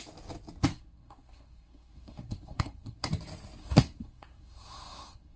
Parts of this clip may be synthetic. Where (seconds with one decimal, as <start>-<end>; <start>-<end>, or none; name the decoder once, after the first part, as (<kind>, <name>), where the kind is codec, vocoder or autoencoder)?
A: 0.7-3.1 (codec, SNAC); 3.6-5.4